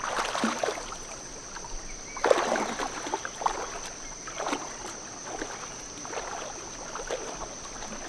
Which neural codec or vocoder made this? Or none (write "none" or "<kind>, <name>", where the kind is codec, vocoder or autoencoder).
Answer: none